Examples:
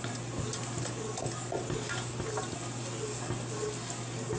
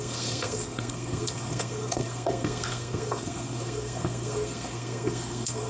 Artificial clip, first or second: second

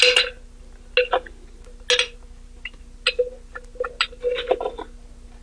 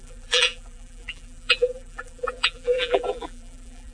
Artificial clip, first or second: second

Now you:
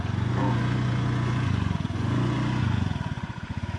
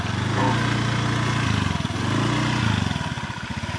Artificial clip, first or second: first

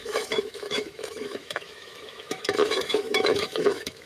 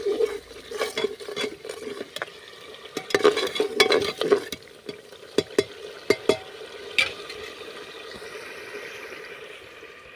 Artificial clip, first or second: first